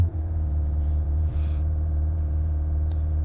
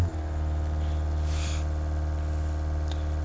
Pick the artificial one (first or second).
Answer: first